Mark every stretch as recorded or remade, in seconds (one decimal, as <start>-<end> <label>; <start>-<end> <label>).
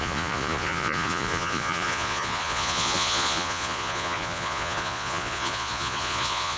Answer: 0.0-6.6 remade